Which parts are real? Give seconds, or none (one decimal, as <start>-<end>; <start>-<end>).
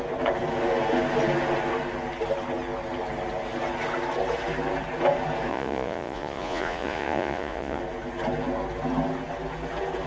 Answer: 0.0-5.5; 7.8-10.1